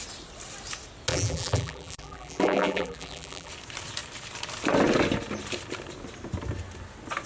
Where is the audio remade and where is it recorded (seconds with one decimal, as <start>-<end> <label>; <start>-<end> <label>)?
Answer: 0.0-1.1 recorded; 1.1-3.5 remade; 3.5-7.3 recorded